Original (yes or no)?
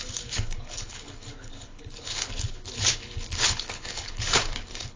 no